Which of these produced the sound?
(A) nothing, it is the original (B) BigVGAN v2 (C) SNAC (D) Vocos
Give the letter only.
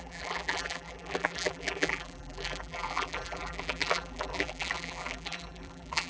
B